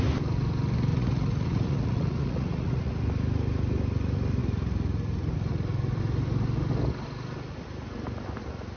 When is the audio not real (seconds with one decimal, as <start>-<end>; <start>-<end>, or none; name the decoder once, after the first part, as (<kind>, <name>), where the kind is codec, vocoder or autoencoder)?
0.9-2.9 (vocoder, Vocos)